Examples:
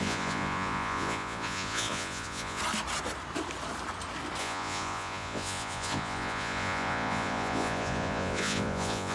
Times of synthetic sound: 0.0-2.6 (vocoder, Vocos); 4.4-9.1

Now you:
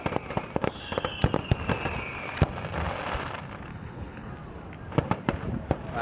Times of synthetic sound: 3.7-4.3 (codec, HILCodec)

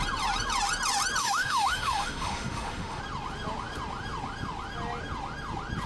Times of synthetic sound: 1.2-3.0 (autoencoder, DAC-VAE)

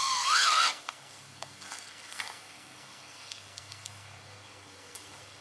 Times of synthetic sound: 0.0-5.4 (codec, SNAC)

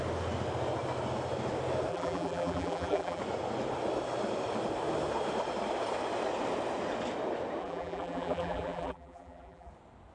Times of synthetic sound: 1.9-3.2 (vocoder, BigVGAN v2); 7.6-9.7

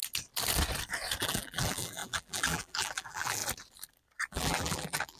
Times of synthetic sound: 1.2-3.4 (vocoder, BigVGAN v2); 4.3-5.2

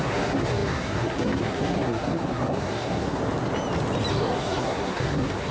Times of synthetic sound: 0.0-3.2 (codec, SNAC); 4.1-5.5

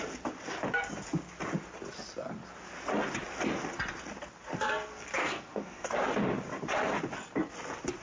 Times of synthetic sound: 5.2-5.9 (codec, SNAC)